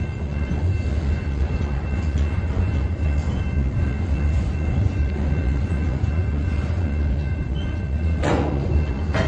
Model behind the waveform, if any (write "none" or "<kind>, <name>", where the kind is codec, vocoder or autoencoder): vocoder, Vocos